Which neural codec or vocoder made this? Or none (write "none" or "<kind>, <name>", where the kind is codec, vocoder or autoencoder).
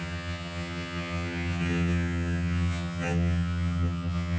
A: vocoder, HiFi-GAN